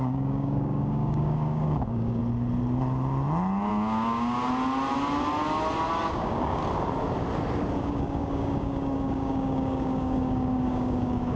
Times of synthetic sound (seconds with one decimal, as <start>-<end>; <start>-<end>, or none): 0.0-2.2; 3.7-4.4; 6.1-6.6; 7.8-11.4